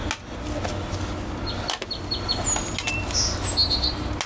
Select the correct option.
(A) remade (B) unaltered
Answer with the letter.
B